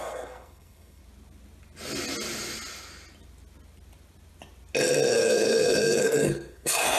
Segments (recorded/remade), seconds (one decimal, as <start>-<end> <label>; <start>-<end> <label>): 0.0-1.0 remade; 1.0-5.1 recorded; 5.1-7.0 remade